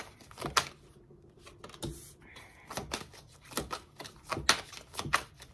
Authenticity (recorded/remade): recorded